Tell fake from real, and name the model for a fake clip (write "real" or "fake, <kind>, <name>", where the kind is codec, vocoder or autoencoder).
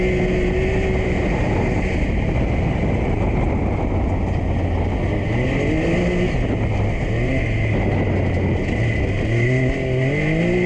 real